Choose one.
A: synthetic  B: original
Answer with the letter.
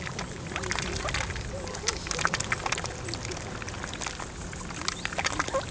B